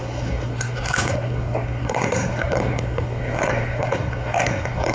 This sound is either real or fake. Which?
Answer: fake